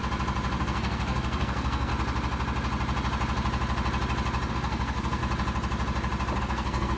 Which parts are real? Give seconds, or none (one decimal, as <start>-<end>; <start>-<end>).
0.0-0.6; 1.9-4.5; 5.2-6.4